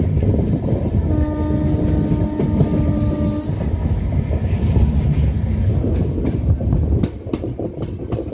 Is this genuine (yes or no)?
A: yes